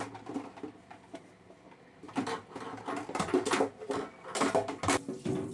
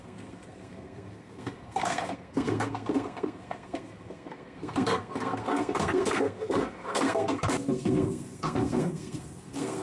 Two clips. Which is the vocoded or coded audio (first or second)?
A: second